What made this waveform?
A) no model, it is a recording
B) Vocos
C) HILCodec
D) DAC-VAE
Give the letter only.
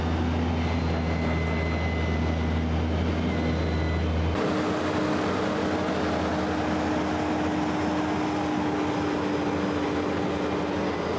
A